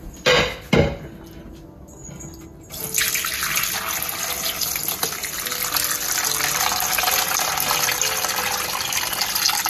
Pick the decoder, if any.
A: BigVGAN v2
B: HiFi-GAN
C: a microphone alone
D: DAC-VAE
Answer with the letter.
C